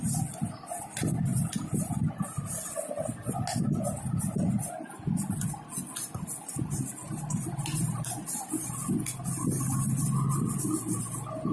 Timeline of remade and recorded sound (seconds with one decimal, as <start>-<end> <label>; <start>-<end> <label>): 0.0-11.5 recorded